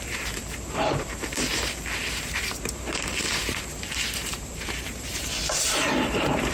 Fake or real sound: fake